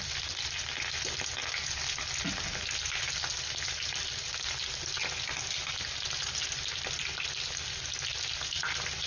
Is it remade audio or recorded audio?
recorded